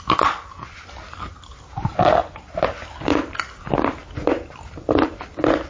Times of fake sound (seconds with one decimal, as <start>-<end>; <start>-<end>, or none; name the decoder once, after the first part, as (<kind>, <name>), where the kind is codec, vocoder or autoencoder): none